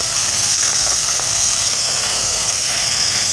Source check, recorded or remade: remade